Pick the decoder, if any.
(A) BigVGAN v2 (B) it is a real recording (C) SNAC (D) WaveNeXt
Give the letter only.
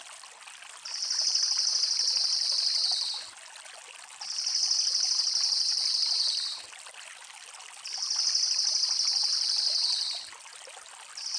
B